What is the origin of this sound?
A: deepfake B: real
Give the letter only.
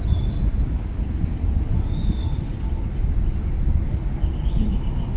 B